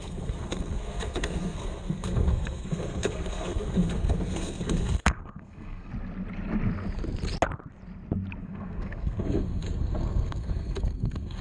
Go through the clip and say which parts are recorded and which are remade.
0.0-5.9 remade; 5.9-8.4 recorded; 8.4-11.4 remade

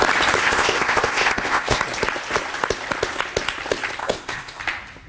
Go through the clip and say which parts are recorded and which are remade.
0.0-0.4 recorded; 0.4-1.8 remade; 1.8-4.0 recorded; 4.0-4.6 remade; 4.6-5.1 recorded

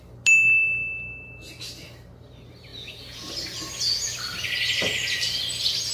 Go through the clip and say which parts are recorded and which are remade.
0.0-2.7 recorded; 2.7-3.3 remade; 3.3-5.9 recorded

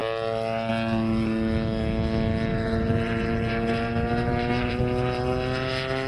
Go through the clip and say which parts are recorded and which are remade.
0.0-2.5 recorded; 2.5-4.8 remade; 4.8-6.1 recorded

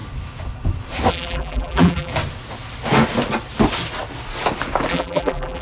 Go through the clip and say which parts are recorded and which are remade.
0.0-1.1 recorded; 1.1-2.1 remade; 2.1-4.9 recorded; 4.9-5.6 remade

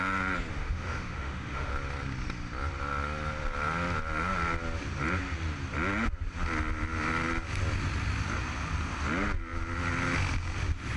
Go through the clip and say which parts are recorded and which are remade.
0.0-0.5 recorded; 0.5-1.7 remade; 1.7-11.0 recorded

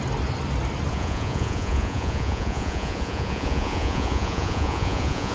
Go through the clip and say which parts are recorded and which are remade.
0.0-0.9 recorded; 0.9-5.3 remade

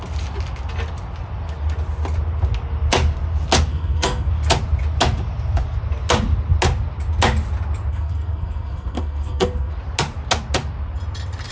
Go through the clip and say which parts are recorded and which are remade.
0.0-3.7 recorded; 3.7-4.3 remade; 4.3-7.9 recorded; 7.9-9.7 remade; 9.7-11.5 recorded